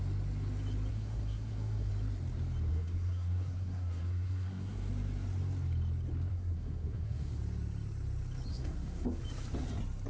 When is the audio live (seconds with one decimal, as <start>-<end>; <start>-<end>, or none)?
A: 0.0-0.9; 1.9-2.7; 4.9-6.3; 7.4-8.5; 9.2-10.1